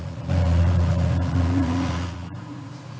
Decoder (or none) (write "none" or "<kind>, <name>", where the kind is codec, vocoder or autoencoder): vocoder, Vocos